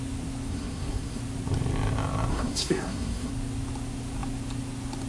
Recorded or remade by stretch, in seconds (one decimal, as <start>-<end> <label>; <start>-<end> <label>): 0.0-0.5 recorded; 0.5-1.2 remade; 1.2-2.3 recorded; 2.3-3.3 remade; 3.3-5.1 recorded